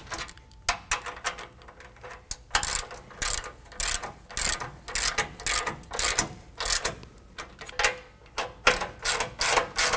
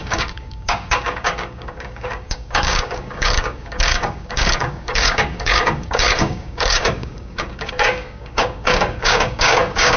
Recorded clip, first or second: first